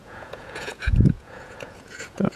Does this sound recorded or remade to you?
remade